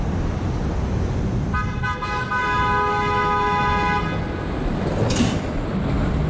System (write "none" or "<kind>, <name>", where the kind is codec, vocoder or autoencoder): none